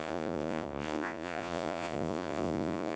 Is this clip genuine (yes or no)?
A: no